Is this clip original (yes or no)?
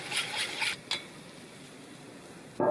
yes